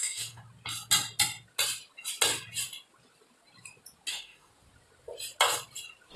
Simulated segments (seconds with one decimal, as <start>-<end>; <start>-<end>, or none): 0.0-0.4; 4.1-4.5